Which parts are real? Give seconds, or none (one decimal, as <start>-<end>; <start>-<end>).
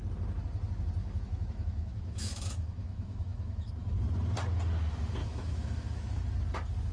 0.0-1.0; 3.7-5.2; 6.2-6.9